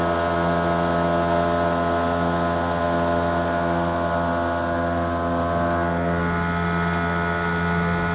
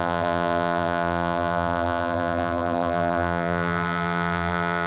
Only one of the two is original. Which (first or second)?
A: first